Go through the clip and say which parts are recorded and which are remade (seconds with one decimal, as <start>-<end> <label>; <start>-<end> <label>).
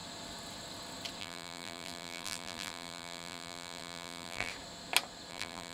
0.0-1.2 recorded; 1.2-4.5 remade; 4.5-5.3 recorded; 5.3-5.7 remade